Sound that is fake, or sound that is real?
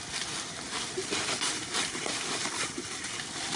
real